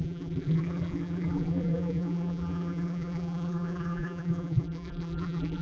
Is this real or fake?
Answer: fake